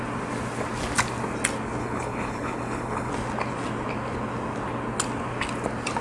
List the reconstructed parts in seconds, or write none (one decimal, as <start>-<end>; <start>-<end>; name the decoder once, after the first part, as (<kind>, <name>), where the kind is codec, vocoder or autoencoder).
1.8-3.1 (codec, HILCodec)